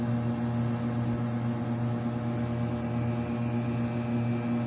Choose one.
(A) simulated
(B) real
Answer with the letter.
B